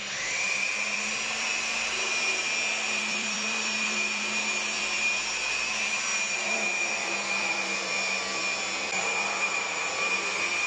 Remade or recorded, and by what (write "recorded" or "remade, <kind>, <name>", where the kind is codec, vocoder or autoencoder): remade, vocoder, BigVGAN v2